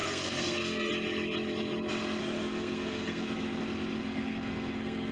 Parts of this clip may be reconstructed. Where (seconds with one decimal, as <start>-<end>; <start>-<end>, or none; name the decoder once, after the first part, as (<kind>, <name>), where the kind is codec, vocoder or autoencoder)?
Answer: 0.0-0.9 (codec, SNAC); 2.2-3.6; 4.0-5.1